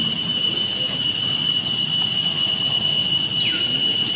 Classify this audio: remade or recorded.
recorded